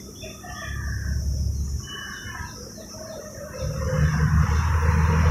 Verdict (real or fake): real